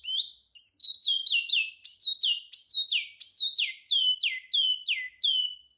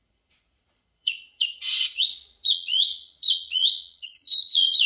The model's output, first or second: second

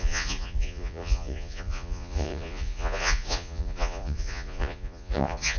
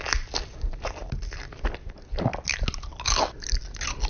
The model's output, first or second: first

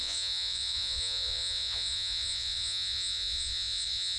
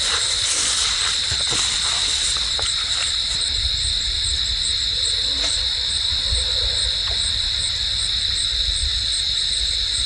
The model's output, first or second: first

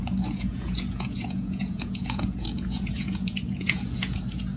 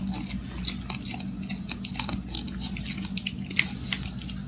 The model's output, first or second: first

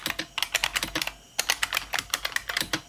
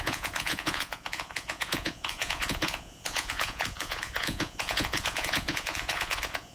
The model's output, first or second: second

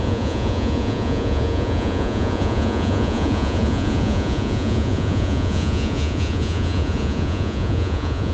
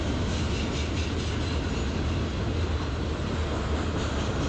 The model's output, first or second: first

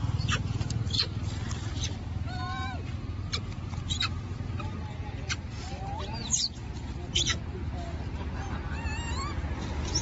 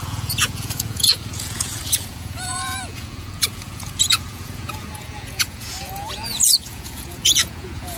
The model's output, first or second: second